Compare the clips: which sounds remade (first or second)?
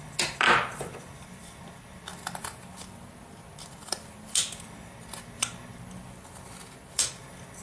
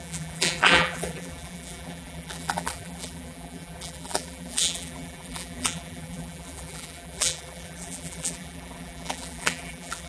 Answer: second